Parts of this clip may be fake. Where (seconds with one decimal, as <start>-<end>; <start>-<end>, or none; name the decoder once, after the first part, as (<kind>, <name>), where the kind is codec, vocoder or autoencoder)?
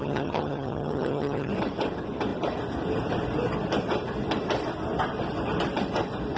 0.0-1.5 (vocoder, HiFi-GAN)